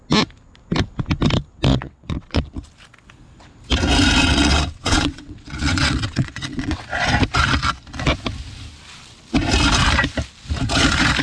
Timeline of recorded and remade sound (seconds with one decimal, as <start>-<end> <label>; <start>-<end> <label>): 0.0-1.7 recorded; 1.7-2.4 remade; 2.4-4.2 recorded; 4.2-6.8 remade; 6.8-11.2 recorded